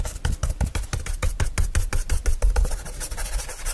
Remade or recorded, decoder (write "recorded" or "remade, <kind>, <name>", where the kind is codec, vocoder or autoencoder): recorded